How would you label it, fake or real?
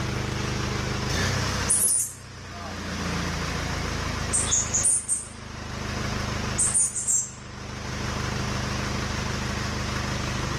real